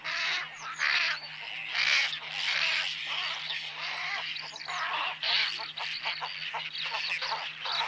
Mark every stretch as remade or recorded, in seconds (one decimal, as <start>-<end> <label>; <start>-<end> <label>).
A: 0.0-7.9 recorded